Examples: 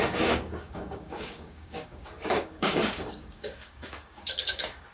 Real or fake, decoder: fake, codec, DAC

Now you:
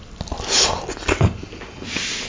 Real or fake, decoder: real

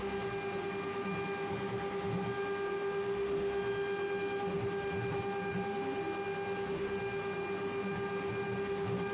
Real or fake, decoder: real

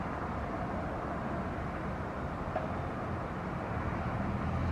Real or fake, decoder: real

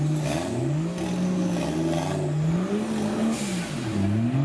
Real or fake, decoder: real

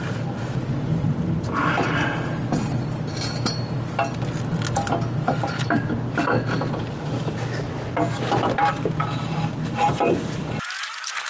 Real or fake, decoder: real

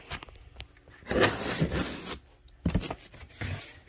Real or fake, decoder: real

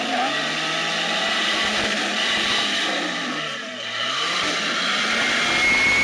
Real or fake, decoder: real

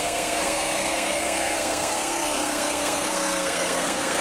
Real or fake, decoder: fake, codec, SNAC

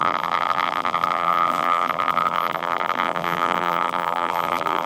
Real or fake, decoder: fake, vocoder, BigVGAN v2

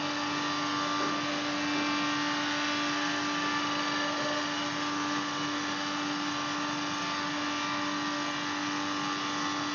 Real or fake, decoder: real